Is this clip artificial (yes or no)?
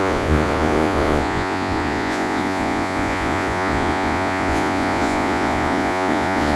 yes